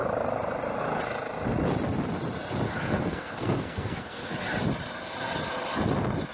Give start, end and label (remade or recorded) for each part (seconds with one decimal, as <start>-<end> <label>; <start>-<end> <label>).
0.0-2.7 recorded; 2.7-4.3 remade; 4.3-6.3 recorded